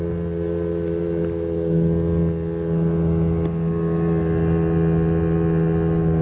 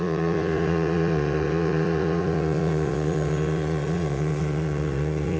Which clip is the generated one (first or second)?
second